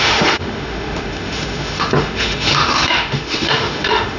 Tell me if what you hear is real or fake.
fake